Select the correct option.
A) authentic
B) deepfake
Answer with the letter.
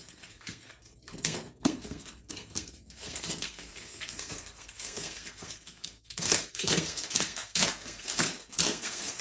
B